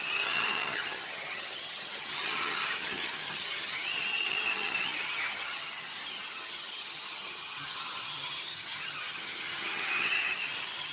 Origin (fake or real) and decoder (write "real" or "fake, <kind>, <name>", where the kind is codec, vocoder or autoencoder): fake, vocoder, HiFi-GAN